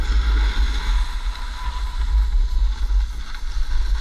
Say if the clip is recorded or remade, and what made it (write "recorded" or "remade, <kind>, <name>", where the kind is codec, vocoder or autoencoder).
recorded